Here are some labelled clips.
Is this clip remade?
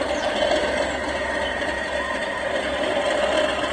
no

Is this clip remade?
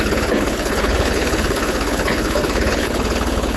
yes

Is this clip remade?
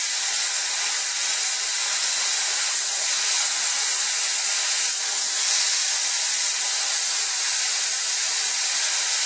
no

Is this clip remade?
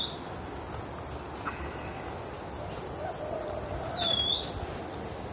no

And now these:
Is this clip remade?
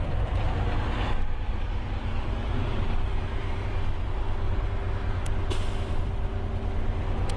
no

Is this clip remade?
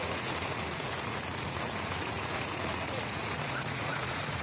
yes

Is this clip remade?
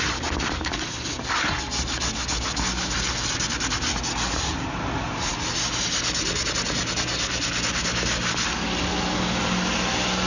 no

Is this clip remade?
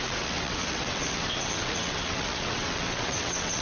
yes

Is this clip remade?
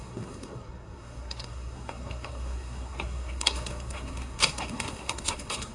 yes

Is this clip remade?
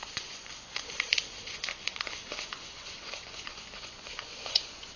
yes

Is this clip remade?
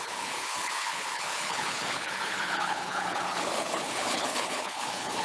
yes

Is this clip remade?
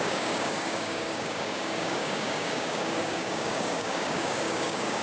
yes